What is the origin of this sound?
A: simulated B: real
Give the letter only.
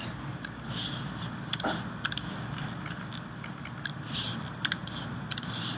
B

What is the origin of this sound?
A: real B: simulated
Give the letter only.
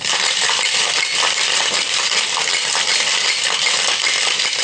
A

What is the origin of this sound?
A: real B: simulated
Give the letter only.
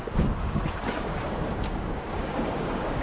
B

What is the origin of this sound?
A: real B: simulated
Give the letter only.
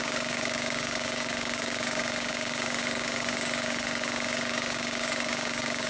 B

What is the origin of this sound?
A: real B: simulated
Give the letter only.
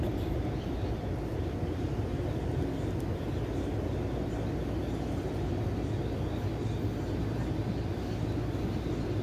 A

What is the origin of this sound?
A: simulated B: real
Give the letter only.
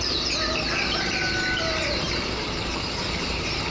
B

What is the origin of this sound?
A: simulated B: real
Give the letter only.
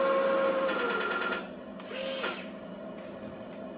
B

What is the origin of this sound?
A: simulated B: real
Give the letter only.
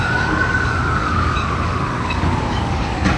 A